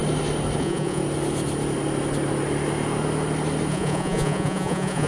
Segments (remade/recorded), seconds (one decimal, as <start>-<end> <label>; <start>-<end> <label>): 0.0-0.6 recorded; 0.6-1.0 remade; 1.0-3.7 recorded; 3.7-5.1 remade